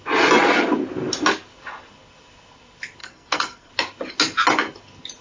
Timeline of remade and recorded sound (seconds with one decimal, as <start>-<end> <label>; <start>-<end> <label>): 0.0-3.0 recorded; 3.0-3.7 remade; 3.7-5.2 recorded